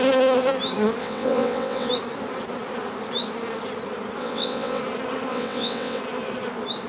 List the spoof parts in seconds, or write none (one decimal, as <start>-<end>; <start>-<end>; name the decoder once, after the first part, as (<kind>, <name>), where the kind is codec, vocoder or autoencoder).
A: 1.0-1.9 (vocoder, WaveNeXt); 4.2-4.8; 5.3-6.0